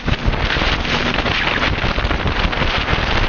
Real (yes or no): yes